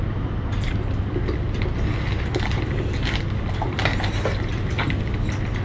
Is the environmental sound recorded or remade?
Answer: recorded